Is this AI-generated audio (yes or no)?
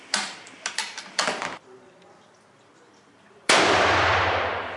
yes